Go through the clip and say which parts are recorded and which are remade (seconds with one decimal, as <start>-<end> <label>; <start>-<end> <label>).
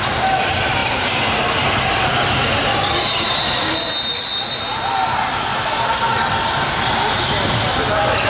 0.0-8.3 recorded